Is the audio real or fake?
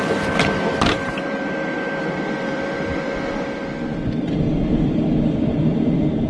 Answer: fake